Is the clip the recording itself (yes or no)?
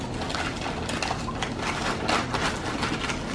yes